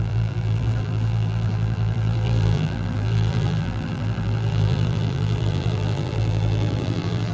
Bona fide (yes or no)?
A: no